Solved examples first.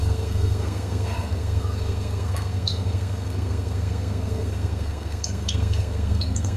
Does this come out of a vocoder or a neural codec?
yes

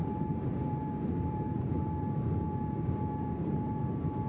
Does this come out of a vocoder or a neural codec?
yes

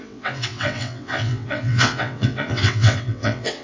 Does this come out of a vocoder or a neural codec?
yes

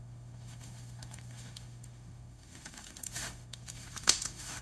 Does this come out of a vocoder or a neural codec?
yes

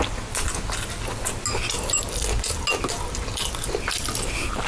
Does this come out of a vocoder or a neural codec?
no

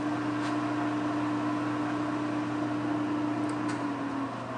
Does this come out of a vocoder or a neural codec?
no